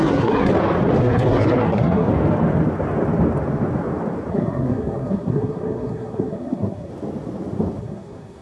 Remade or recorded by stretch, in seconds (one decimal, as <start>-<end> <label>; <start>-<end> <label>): 0.0-0.5 remade; 0.5-1.0 recorded; 1.0-2.1 remade; 2.1-4.3 recorded; 4.3-6.9 remade; 6.9-7.8 recorded; 7.8-8.4 remade